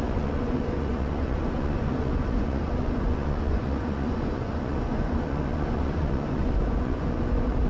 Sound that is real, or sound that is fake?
fake